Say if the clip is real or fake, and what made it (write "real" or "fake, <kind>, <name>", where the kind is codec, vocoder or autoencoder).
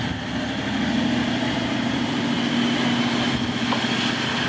real